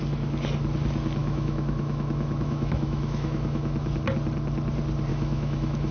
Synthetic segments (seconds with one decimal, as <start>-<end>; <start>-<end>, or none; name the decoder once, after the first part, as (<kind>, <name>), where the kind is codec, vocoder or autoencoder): 1.2-3.9 (autoencoder, DAC-VAE); 5.1-5.9